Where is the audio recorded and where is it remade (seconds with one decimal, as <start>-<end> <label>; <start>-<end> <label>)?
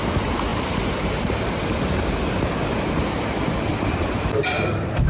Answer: 0.0-0.5 recorded; 0.5-2.2 remade; 2.2-3.7 recorded; 3.7-5.1 remade